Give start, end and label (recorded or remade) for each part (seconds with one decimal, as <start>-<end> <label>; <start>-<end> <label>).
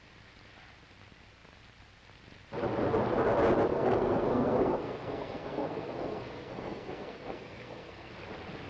0.0-3.7 recorded; 3.7-8.1 remade; 8.1-8.7 recorded